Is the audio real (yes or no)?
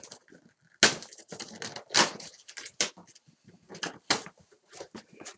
yes